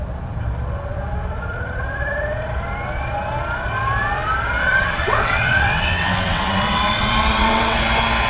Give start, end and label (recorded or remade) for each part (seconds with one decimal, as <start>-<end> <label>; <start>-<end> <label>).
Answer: 0.0-4.6 recorded; 4.6-7.8 remade; 7.8-8.3 recorded